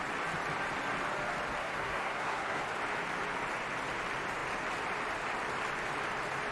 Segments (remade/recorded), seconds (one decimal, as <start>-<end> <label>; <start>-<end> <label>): 0.0-1.6 recorded; 1.6-2.6 remade; 2.6-6.5 recorded